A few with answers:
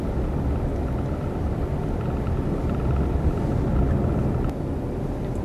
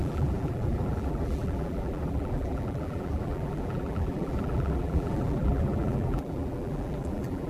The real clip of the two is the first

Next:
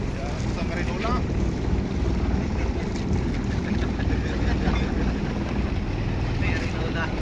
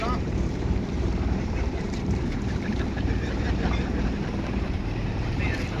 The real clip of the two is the first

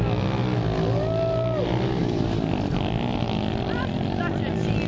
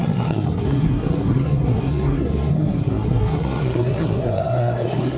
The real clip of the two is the first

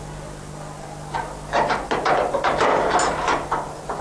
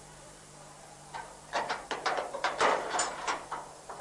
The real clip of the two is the first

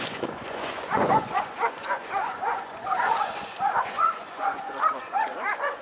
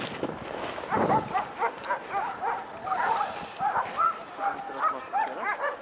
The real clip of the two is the second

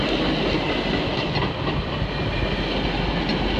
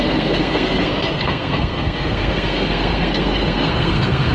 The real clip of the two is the first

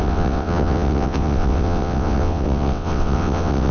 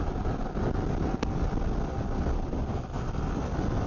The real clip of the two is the second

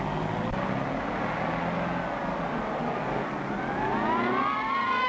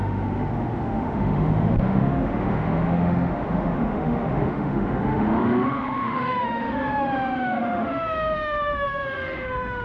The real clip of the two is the first